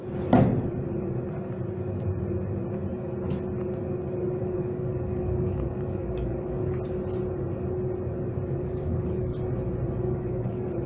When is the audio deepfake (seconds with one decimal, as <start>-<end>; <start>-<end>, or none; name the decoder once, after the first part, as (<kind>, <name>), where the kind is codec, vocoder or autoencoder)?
4.4-6.6 (codec, DAC); 8.6-9.3; 10.0-10.9